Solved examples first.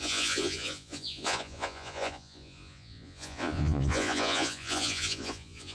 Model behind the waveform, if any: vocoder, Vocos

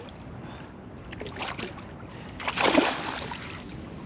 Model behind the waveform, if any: none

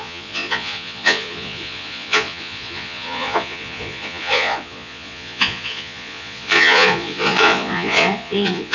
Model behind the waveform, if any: vocoder, Vocos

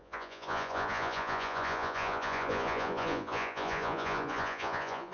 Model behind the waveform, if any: vocoder, Vocos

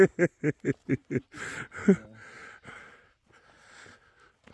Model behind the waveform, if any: none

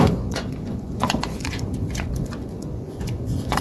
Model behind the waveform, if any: vocoder, Vocos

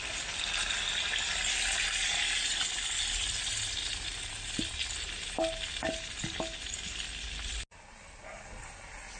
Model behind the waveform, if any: none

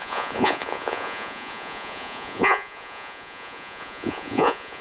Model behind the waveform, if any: vocoder, Vocos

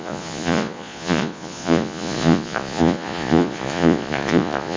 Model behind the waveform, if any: vocoder, Vocos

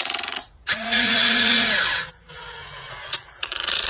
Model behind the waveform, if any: vocoder, Vocos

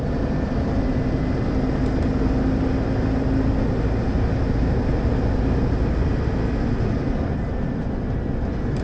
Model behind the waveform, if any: none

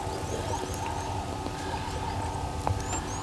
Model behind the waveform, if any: none